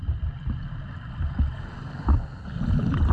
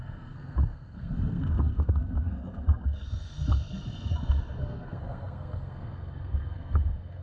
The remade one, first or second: second